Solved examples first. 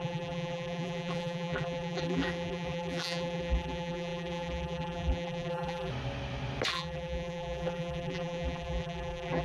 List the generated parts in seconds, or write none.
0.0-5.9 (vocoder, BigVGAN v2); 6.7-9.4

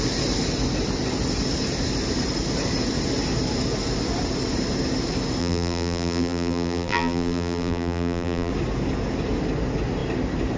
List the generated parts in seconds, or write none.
5.4-8.5 (vocoder, BigVGAN v2)